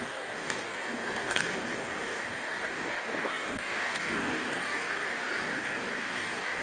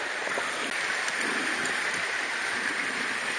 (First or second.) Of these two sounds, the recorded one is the second